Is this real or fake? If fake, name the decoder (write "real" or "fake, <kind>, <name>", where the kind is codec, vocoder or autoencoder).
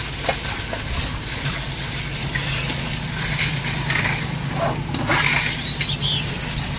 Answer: real